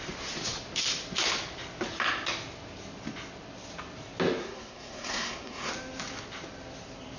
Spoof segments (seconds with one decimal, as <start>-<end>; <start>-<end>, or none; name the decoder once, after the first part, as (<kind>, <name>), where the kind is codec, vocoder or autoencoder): 4.4-5.7 (codec, SNAC)